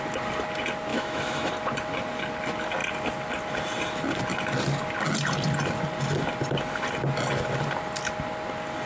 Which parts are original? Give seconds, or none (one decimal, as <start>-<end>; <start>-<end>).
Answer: 0.0-0.9; 1.5-8.9

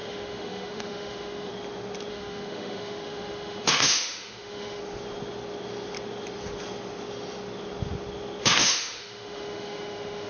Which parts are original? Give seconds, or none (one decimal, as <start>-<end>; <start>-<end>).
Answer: 1.5-2.1; 4.8-8.4

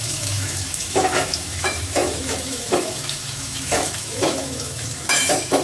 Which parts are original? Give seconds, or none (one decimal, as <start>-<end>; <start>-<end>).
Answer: none

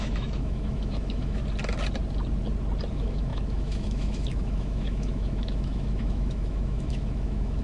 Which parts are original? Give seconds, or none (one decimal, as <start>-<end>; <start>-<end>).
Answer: 1.4-2.9